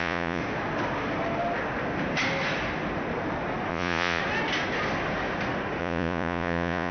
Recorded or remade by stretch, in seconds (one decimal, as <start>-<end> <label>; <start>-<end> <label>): 0.0-0.4 remade; 0.4-3.7 recorded; 3.7-4.2 remade; 4.2-5.8 recorded; 5.8-6.9 remade